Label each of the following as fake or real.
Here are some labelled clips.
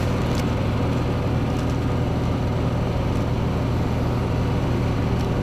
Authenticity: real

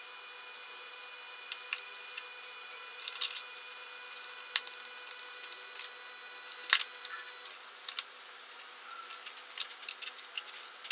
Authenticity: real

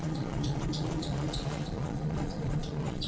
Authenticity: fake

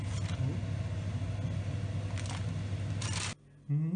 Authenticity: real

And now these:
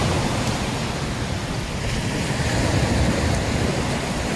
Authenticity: real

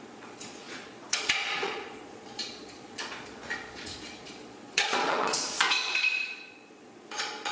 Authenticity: fake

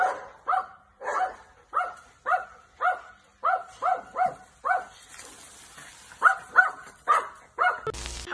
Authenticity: real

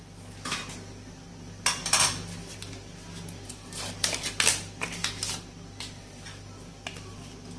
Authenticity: real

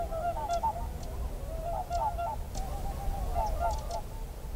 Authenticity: real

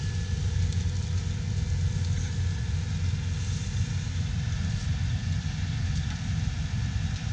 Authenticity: real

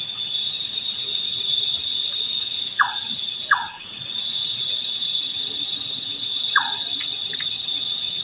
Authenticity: fake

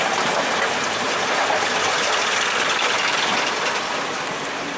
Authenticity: real